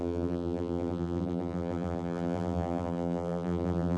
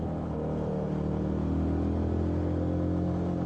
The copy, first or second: first